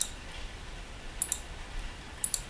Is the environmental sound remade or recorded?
recorded